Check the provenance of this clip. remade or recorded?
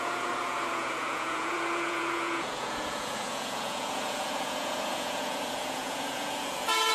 remade